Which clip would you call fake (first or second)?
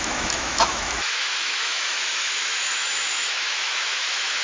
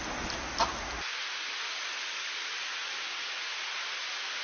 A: first